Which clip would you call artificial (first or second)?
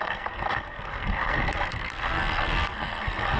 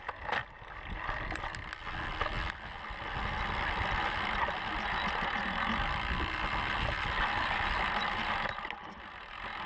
first